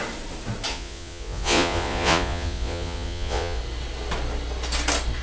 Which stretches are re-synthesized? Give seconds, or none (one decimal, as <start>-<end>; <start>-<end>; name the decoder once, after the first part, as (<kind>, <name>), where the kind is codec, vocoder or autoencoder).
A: 0.7-3.6 (vocoder, Vocos)